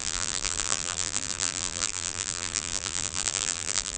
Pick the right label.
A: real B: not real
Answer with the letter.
B